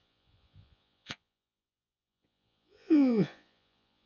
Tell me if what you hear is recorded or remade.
remade